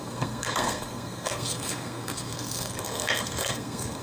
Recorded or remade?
remade